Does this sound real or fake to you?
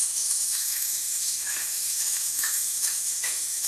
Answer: fake